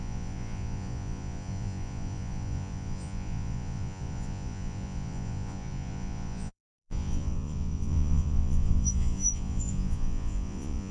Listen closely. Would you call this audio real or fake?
fake